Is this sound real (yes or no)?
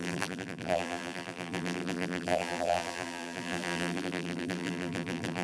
no